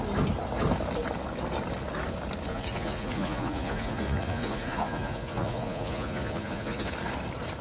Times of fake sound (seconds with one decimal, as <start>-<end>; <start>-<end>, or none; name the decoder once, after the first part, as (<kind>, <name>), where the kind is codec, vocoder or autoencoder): 2.5-6.9 (vocoder, Vocos)